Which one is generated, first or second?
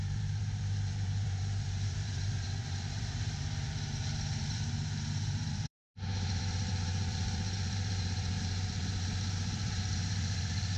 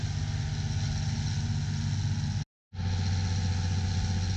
first